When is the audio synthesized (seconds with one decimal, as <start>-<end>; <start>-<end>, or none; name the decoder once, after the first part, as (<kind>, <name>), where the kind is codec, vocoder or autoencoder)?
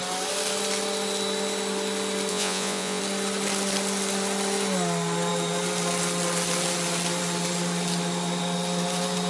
2.3-3.0 (vocoder, Vocos)